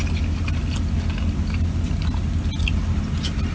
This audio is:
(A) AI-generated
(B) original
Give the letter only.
B